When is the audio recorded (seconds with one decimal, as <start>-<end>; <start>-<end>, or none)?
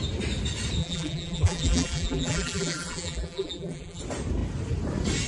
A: 0.0-0.8; 4.0-5.3